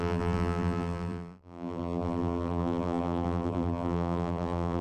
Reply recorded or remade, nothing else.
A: remade